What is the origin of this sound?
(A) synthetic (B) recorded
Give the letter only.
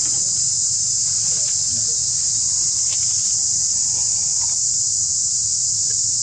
B